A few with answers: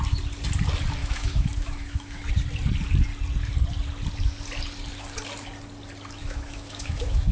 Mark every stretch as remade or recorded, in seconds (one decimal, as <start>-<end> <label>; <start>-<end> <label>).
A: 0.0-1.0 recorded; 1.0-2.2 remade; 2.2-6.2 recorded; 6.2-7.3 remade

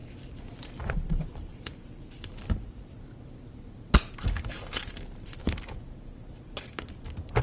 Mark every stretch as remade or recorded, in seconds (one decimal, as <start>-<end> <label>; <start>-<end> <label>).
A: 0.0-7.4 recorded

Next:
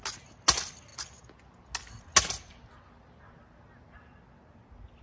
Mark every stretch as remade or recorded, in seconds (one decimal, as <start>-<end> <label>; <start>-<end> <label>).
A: 0.0-5.0 recorded

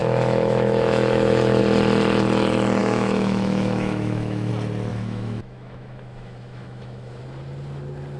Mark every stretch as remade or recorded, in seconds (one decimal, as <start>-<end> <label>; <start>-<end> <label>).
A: 0.0-1.6 remade; 1.6-2.8 recorded; 2.8-4.5 remade; 4.5-4.9 recorded; 4.9-7.2 remade; 7.2-8.2 recorded